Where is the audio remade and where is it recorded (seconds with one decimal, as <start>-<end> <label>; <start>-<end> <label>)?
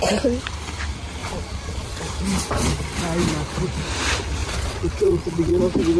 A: 0.0-1.2 recorded; 1.2-2.0 remade; 2.0-4.4 recorded; 4.4-5.6 remade; 5.6-6.0 recorded